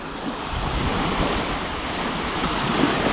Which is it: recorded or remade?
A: recorded